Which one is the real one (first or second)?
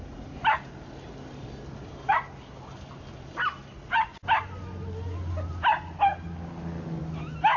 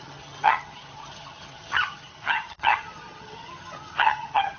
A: first